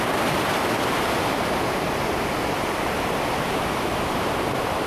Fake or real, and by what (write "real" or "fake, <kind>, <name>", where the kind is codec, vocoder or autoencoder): real